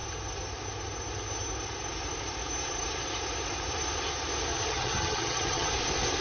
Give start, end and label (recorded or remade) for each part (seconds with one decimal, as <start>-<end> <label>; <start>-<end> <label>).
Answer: 0.0-4.5 recorded; 4.5-5.7 remade; 5.7-6.2 recorded